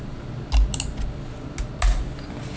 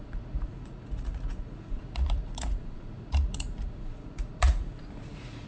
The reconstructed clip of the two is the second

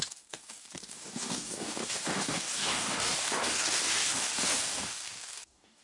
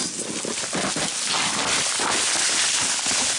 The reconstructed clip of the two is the first